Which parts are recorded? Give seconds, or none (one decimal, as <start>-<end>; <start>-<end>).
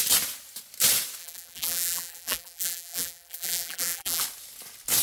0.0-1.2; 4.2-5.0